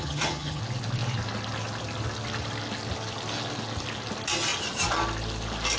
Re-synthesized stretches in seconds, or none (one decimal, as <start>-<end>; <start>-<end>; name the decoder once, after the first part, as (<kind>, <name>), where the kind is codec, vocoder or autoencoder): 0.0-0.6 (vocoder, HiFi-GAN)